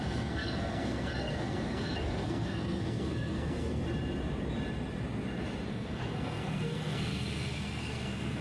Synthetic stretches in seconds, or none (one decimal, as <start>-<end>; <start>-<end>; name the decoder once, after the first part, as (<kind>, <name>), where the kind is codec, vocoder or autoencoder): 0.0-3.8 (codec, SNAC); 5.7-8.4